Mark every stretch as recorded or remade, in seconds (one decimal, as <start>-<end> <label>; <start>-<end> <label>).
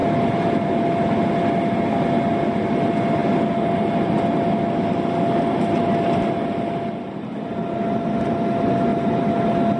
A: 0.0-9.8 recorded